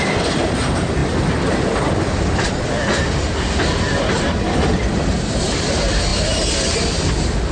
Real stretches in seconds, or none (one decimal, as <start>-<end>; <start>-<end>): 0.0-7.5